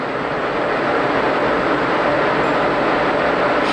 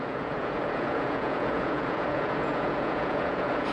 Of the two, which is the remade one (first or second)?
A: second